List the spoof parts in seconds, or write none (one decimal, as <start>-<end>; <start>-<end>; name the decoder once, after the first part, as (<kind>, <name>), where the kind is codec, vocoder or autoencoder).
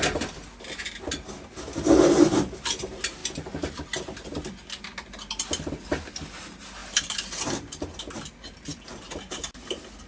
none